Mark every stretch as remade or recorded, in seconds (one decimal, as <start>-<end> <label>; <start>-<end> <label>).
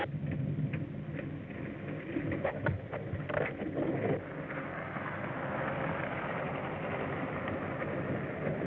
0.0-4.7 recorded; 4.7-5.3 remade; 5.3-8.7 recorded